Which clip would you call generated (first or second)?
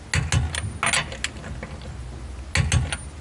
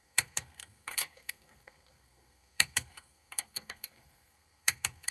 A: second